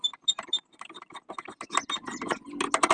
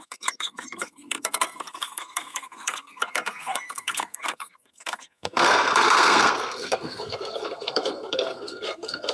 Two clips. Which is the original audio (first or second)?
first